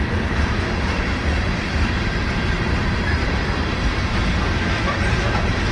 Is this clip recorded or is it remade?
recorded